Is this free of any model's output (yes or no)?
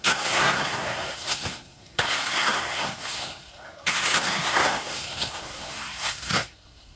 no